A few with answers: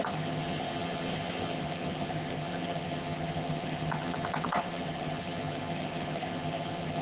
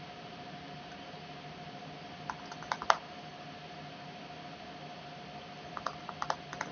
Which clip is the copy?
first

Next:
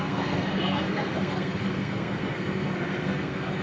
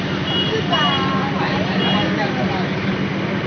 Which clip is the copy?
first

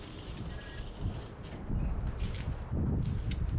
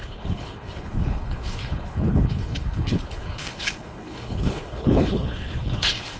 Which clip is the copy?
second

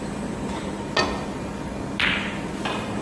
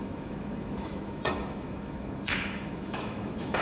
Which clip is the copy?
second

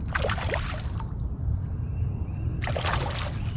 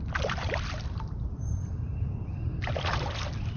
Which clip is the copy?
second